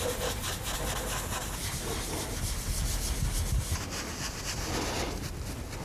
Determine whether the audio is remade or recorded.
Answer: recorded